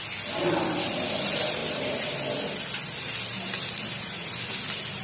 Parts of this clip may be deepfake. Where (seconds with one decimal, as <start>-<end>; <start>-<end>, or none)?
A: none

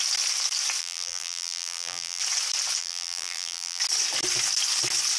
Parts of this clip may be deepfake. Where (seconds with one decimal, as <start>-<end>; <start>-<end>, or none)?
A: 0.8-2.2; 2.8-3.8

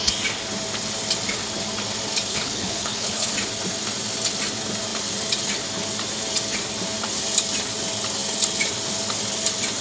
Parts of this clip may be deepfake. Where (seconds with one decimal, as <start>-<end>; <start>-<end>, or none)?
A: 2.3-3.3